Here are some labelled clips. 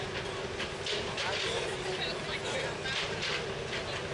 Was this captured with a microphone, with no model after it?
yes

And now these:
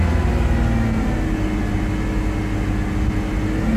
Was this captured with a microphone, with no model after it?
yes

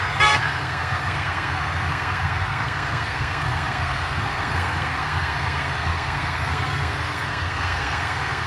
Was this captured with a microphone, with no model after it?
no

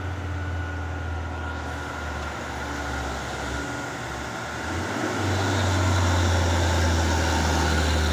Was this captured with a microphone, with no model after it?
yes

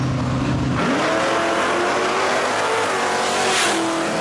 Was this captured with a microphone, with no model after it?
yes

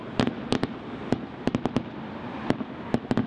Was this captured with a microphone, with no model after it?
yes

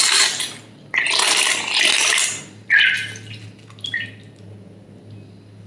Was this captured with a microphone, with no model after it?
yes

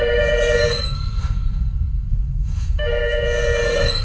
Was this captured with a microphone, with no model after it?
no